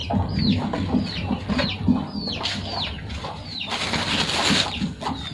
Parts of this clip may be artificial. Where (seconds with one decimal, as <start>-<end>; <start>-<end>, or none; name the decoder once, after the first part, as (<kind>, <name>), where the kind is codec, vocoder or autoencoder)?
none